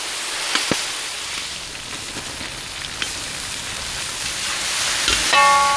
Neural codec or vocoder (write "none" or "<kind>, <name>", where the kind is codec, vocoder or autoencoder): none